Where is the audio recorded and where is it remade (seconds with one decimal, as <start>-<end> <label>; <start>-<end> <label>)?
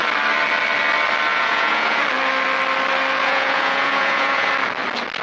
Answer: 0.0-1.3 recorded; 1.3-2.0 remade; 2.0-3.2 recorded; 3.2-4.5 remade; 4.5-5.2 recorded